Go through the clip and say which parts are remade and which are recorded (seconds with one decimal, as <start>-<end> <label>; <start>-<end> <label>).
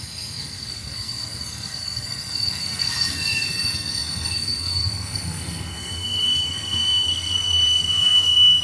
0.0-8.6 remade